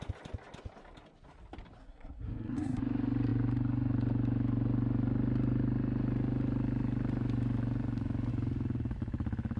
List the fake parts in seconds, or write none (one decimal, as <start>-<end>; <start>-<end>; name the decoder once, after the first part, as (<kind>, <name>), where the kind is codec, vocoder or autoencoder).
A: 1.8-2.8 (codec, SNAC)